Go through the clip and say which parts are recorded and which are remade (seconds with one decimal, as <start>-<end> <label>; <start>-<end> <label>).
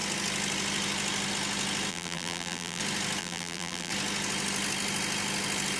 0.0-1.9 recorded; 1.9-2.8 remade; 2.8-3.2 recorded; 3.2-3.9 remade; 3.9-5.8 recorded